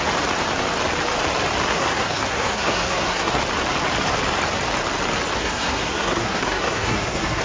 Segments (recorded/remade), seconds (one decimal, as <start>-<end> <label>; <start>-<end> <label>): 0.0-1.7 recorded; 1.7-3.4 remade; 3.4-5.4 recorded; 5.4-7.4 remade